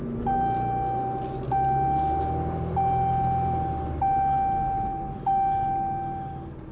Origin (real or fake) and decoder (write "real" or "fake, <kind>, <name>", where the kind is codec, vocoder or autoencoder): real